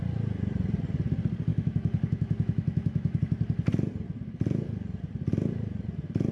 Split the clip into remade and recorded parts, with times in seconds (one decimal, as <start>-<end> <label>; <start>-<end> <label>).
0.0-1.5 recorded; 1.5-3.2 remade; 3.2-6.3 recorded